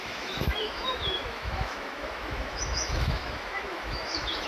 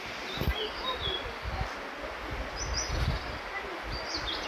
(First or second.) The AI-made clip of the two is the first